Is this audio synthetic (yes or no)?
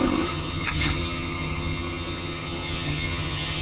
yes